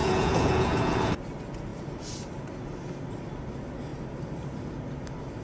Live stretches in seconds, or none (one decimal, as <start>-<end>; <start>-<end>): 1.1-5.4